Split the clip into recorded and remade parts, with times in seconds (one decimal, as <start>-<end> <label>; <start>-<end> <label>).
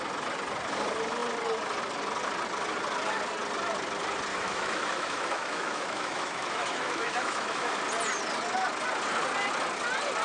0.0-4.3 recorded; 4.3-7.8 remade; 7.8-10.2 recorded